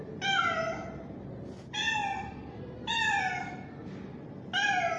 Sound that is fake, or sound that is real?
real